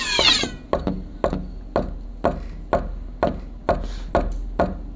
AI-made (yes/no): no